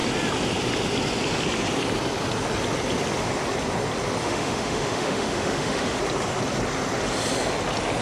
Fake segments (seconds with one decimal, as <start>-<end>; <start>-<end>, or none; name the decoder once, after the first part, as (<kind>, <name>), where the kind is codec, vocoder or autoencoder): 4.2-6.0 (autoencoder, DAC-VAE)